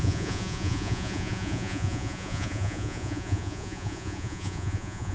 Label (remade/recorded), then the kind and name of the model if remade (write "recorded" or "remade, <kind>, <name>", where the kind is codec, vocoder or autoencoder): remade, vocoder, Vocos